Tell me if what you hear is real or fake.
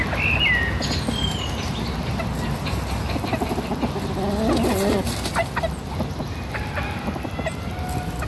real